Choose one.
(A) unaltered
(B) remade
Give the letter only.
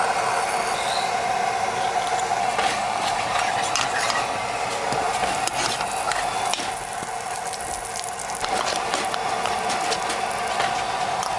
A